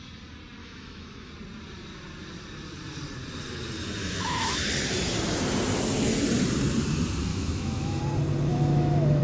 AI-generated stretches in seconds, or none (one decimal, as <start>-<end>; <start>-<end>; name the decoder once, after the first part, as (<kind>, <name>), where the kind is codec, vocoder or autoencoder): 0.6-1.3 (autoencoder, DAC-VAE); 4.0-4.7; 7.3-8.0; 8.5-9.2